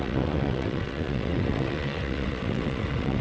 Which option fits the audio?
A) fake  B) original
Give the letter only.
A